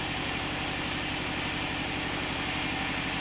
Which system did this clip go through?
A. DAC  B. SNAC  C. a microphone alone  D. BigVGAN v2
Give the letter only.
C